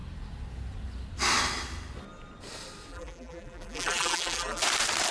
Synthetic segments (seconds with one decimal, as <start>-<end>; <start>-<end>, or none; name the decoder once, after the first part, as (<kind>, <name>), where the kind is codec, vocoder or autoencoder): 2.9-4.6 (vocoder, BigVGAN v2)